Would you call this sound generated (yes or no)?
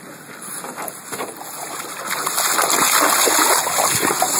no